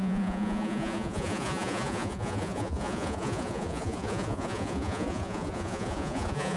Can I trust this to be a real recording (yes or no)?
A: no